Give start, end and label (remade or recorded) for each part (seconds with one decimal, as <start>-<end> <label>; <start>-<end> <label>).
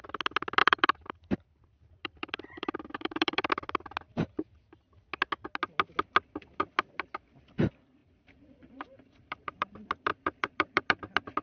0.0-0.6 recorded; 0.6-3.5 remade; 3.5-8.0 recorded; 8.0-9.7 remade; 9.7-10.1 recorded; 10.1-11.0 remade; 11.0-11.4 recorded